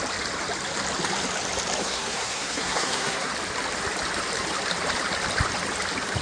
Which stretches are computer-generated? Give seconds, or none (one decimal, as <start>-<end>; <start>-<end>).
1.8-3.3